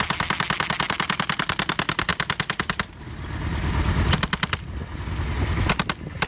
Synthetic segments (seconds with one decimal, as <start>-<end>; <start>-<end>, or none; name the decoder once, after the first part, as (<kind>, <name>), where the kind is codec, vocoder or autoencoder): none